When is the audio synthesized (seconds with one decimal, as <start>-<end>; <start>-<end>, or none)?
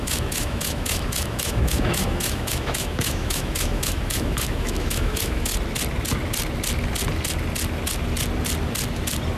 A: 0.0-5.5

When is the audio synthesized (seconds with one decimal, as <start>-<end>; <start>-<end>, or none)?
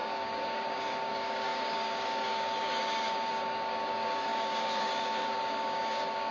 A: 0.0-6.3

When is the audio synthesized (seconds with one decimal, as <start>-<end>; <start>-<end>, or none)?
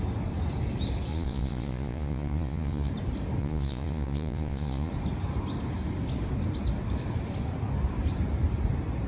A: 1.1-2.9; 3.4-4.9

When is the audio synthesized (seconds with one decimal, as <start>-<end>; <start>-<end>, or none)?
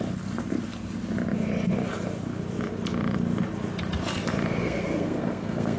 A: 4.6-5.8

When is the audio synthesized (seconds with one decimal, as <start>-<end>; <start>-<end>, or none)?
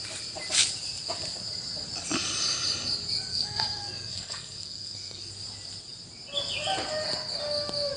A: 3.3-5.3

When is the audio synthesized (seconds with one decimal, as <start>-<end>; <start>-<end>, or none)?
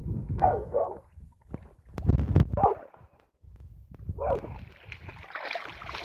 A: 0.0-1.1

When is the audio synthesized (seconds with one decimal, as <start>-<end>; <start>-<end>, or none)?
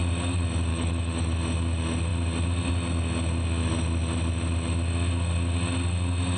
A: 0.7-1.4